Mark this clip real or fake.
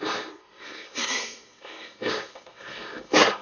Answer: fake